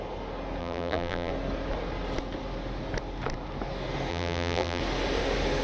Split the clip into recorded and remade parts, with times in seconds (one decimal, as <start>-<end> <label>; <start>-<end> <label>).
0.0-0.6 recorded; 0.6-1.3 remade; 1.3-4.1 recorded; 4.1-4.8 remade; 4.8-5.6 recorded